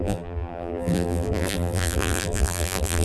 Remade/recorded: remade